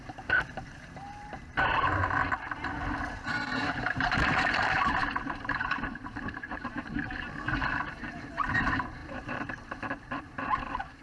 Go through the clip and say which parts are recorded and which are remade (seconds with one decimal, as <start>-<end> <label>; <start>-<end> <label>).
0.0-2.0 remade; 2.0-3.1 recorded; 3.1-11.0 remade